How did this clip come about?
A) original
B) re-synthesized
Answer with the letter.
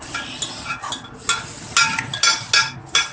A